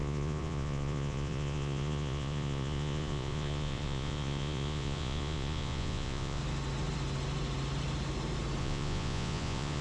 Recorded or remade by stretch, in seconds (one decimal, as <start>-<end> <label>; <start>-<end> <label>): 0.0-6.4 remade; 6.4-8.6 recorded; 8.6-9.8 remade